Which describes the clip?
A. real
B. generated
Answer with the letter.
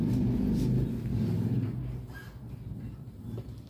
A